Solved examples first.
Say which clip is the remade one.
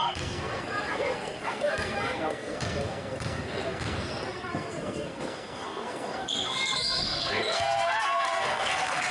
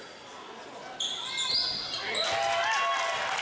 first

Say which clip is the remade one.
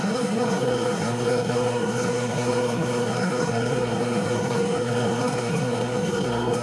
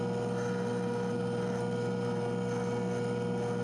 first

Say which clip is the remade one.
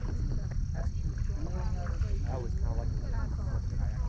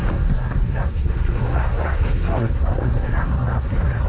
second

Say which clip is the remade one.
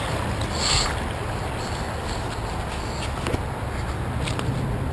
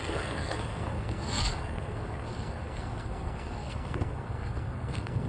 second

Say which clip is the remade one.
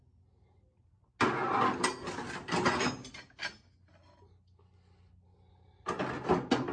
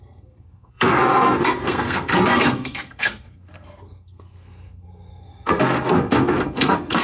second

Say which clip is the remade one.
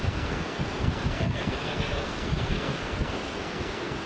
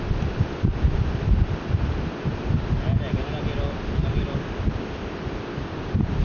first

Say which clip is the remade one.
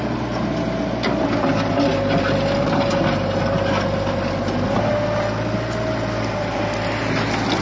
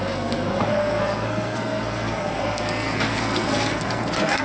second